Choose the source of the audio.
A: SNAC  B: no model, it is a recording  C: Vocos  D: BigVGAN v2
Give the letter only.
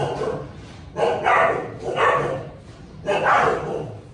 B